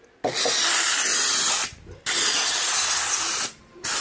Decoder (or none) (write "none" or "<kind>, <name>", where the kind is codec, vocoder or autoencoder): none